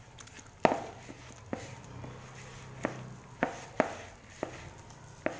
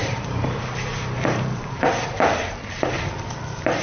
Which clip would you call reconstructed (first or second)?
second